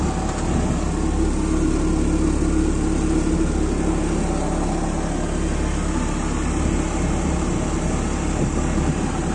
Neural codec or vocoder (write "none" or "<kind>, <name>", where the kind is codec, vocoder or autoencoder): none